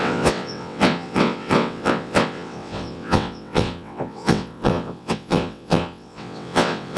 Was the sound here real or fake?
fake